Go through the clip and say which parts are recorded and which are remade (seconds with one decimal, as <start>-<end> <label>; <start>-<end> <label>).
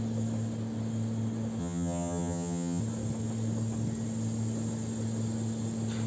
0.0-1.6 recorded; 1.6-2.8 remade; 2.8-6.1 recorded